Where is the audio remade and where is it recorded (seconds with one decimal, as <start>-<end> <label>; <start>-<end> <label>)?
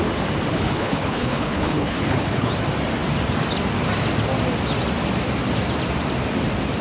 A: 0.0-0.5 recorded; 0.5-2.5 remade; 2.5-6.8 recorded